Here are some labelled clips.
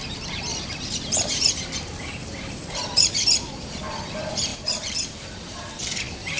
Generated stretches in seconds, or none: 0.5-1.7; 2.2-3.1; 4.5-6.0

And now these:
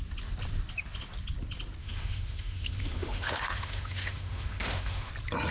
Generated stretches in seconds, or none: 1.8-5.1

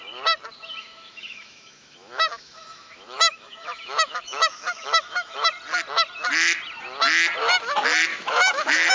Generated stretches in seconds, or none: 0.8-5.5; 8.1-8.9

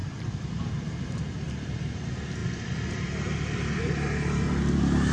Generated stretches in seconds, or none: 0.0-2.0; 2.4-3.1

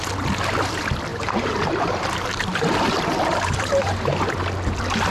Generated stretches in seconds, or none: 1.1-4.2

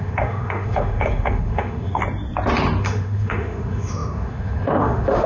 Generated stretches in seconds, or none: 0.0-2.0; 2.8-5.3

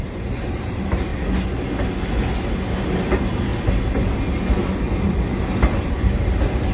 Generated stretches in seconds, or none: 0.0-1.1; 2.8-3.5; 5.4-6.7

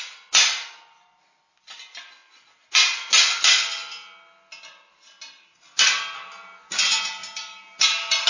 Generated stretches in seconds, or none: none